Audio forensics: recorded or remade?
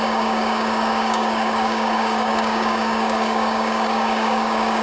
remade